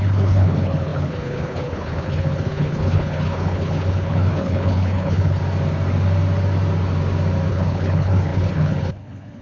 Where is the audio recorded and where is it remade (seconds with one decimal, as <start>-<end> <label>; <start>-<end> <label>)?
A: 0.0-5.4 remade; 5.4-7.5 recorded; 7.5-9.4 remade